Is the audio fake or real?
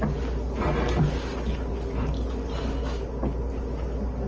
real